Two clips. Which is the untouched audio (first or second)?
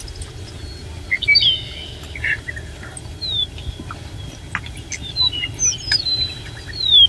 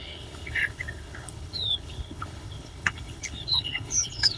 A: first